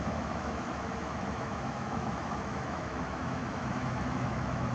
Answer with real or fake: fake